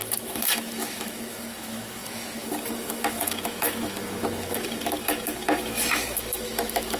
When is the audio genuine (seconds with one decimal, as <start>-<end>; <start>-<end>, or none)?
none